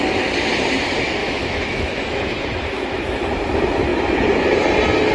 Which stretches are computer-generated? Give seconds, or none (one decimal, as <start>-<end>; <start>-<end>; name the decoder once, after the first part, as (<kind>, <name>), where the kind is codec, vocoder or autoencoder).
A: 1.2-3.3 (autoencoder, DAC-VAE)